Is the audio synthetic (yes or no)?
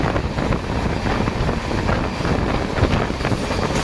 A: no